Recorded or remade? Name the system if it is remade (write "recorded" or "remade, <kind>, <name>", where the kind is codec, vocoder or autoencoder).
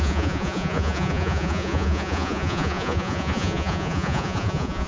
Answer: remade, vocoder, Vocos